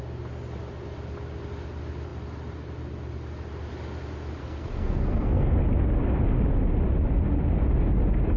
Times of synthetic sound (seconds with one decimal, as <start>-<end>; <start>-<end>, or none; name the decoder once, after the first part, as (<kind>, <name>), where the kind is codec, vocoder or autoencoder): 4.4-5.6 (codec, SNAC)